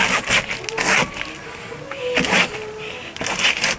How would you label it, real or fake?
real